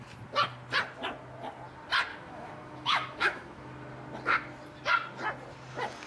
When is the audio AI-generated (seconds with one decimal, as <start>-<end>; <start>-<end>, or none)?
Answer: 2.1-3.7